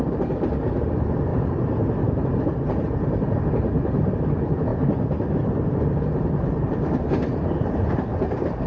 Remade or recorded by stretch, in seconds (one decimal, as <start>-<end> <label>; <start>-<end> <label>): 0.0-8.1 remade; 8.1-8.7 recorded